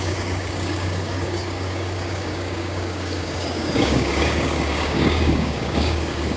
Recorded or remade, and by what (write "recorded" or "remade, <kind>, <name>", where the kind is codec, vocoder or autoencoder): remade, codec, DAC